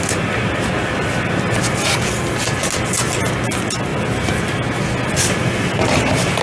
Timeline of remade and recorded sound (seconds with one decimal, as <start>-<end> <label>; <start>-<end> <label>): 0.0-6.4 recorded